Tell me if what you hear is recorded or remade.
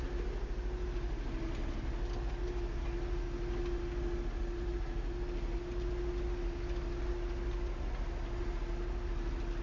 recorded